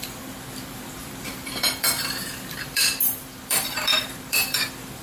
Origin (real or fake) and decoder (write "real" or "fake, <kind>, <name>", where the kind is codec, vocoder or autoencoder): fake, vocoder, BigVGAN v2